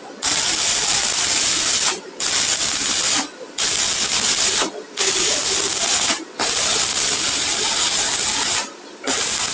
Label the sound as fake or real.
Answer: real